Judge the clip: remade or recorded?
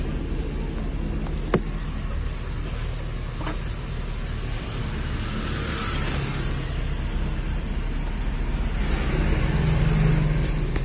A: recorded